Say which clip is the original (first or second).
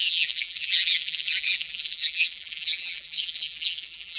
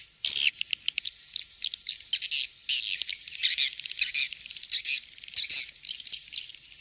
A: second